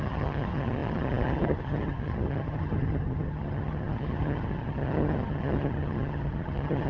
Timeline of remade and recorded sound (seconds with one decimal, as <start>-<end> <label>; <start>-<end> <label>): 0.0-6.9 remade